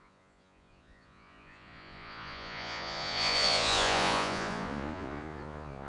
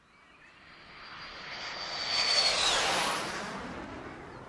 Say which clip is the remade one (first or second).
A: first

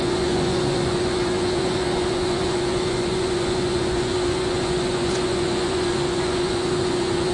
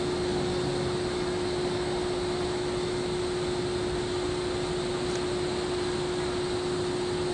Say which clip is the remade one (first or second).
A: first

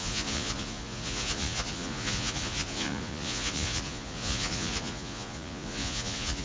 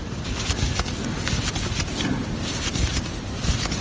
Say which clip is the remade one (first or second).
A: first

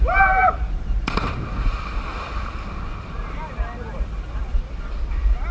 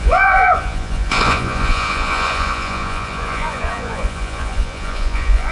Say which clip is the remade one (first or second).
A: second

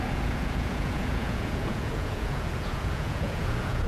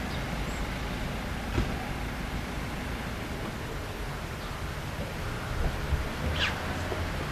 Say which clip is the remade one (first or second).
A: first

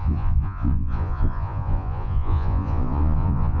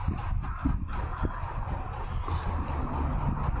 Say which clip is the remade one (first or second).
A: first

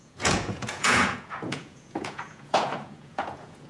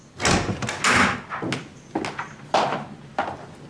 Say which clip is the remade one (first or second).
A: first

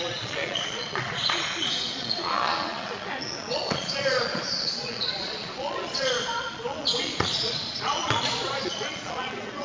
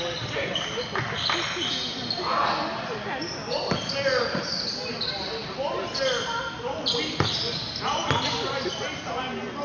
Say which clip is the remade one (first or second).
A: first